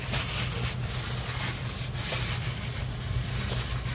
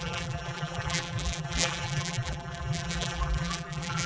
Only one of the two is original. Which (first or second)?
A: first